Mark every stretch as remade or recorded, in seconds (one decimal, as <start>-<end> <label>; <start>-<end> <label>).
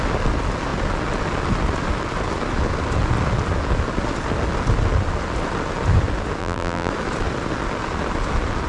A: 0.0-6.4 recorded; 6.4-6.9 remade; 6.9-8.7 recorded